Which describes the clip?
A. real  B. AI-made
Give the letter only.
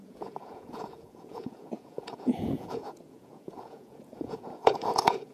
B